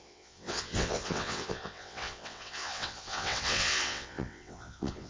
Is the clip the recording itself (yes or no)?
no